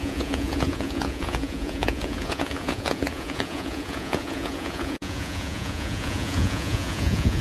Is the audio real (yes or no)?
no